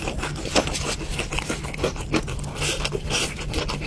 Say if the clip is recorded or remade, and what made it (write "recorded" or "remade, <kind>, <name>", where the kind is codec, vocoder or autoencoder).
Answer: recorded